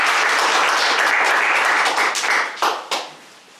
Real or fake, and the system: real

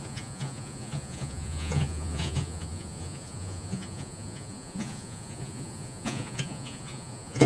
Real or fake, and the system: fake, vocoder, Vocos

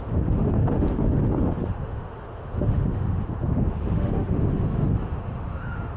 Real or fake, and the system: fake, autoencoder, DAC-VAE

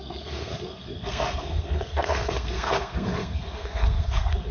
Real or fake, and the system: fake, codec, SNAC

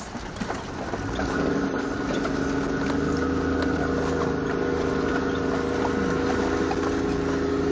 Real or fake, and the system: real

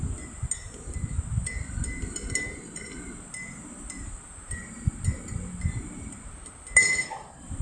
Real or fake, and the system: real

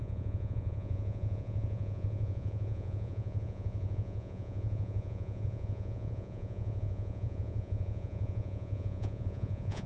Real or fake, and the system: fake, vocoder, Vocos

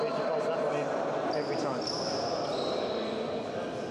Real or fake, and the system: real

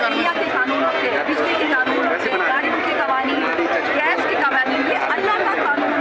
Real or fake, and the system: real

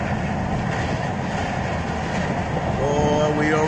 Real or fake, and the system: real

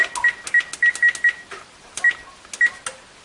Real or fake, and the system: real